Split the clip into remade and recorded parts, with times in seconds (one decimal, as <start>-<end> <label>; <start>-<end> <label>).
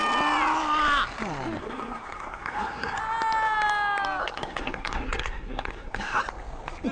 0.0-1.6 recorded; 1.6-3.0 remade; 3.0-4.2 recorded; 4.2-6.2 remade; 6.2-6.9 recorded